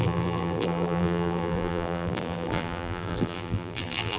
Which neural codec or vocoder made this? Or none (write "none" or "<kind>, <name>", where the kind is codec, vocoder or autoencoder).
vocoder, BigVGAN v2